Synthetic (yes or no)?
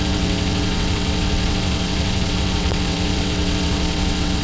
yes